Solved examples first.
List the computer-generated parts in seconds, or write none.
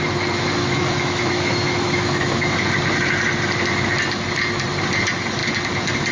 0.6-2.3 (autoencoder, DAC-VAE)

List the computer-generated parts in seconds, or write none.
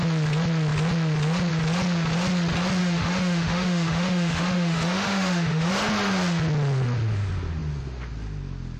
2.8-5.7 (autoencoder, DAC-VAE)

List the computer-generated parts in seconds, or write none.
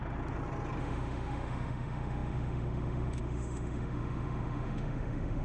0.8-5.4 (autoencoder, DAC-VAE)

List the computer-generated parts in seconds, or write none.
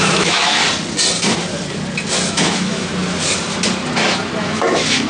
0.0-0.6 (autoencoder, DAC-VAE); 2.3-2.9; 4.4-5.1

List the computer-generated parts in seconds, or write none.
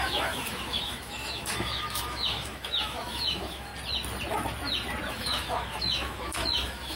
0.0-3.7 (autoencoder, DAC-VAE); 5.1-7.0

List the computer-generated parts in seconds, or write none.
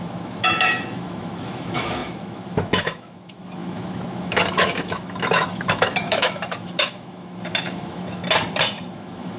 0.0-8.2 (autoencoder, DAC-VAE); 8.9-9.4